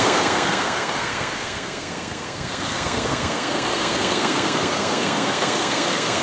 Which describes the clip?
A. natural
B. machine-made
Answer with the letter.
B